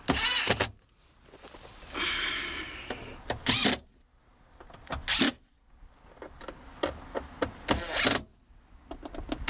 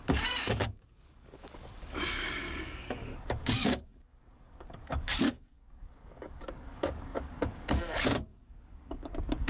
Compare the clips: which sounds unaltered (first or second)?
first